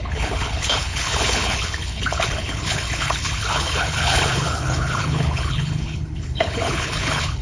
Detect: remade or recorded remade